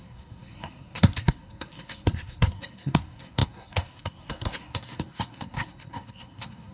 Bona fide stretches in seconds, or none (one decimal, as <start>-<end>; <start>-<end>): none

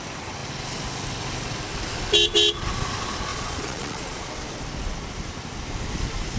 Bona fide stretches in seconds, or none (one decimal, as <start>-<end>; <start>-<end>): 0.0-3.3; 4.3-6.4

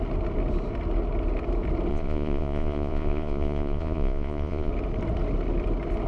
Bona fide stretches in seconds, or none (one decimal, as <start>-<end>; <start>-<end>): 0.0-1.9; 4.7-6.1

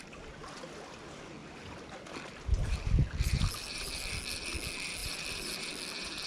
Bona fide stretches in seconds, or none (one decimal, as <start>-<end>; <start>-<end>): 0.0-1.4; 4.1-5.0; 5.6-6.3

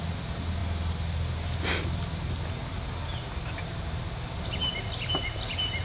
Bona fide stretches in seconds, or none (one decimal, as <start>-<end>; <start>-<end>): 0.0-5.8